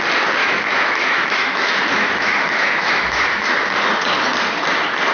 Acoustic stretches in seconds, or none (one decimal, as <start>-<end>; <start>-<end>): 0.0-0.4; 3.5-5.1

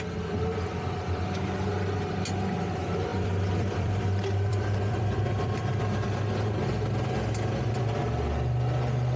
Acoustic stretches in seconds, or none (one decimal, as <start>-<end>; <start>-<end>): 0.0-3.1; 5.8-9.2

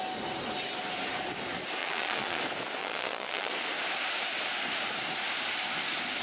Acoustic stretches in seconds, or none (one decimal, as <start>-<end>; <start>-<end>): 0.0-1.8; 2.4-2.8; 3.5-6.2